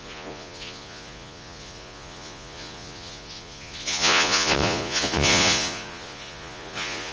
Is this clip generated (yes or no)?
yes